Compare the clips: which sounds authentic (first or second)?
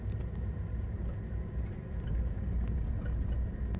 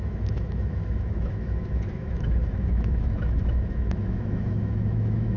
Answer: first